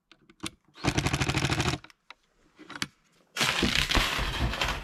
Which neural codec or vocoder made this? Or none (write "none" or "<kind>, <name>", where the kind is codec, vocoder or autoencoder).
none